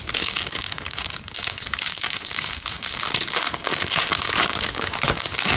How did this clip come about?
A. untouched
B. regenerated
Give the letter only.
B